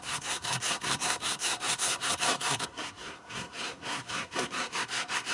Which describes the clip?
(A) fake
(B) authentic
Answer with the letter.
A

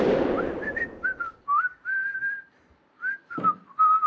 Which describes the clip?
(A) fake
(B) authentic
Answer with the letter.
A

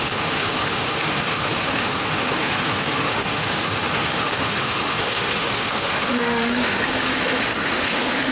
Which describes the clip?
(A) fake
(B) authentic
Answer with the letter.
A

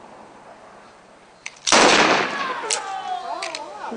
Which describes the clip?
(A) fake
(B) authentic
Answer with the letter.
B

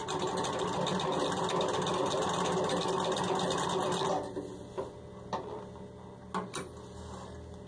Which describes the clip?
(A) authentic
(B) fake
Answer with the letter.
A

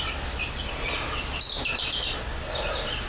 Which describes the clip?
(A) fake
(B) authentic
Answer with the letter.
B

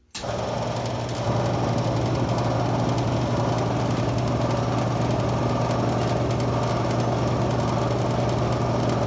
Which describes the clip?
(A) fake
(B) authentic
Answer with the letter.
B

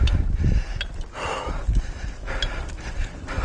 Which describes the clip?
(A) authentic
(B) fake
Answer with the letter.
A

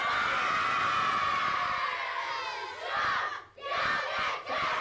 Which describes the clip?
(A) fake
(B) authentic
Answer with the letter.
B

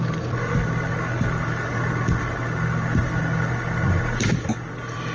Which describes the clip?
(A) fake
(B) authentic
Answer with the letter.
B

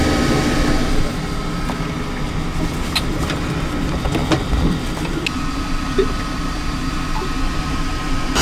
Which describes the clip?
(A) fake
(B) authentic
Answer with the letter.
B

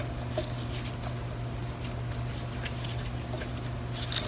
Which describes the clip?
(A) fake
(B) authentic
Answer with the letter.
B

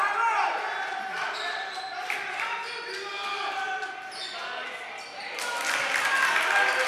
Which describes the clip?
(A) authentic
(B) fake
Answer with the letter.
A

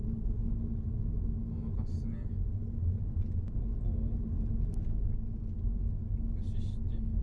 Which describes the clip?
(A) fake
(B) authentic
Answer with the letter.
B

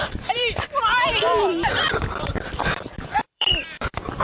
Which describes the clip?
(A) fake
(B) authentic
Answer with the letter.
A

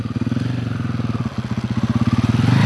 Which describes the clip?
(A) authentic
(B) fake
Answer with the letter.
A